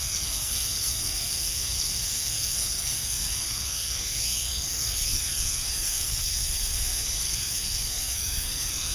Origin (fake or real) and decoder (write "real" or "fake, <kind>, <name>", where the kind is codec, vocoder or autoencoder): fake, codec, SNAC